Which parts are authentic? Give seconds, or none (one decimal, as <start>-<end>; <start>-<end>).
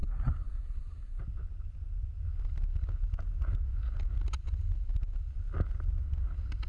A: 1.2-6.7